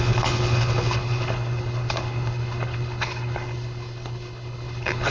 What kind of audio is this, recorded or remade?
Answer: remade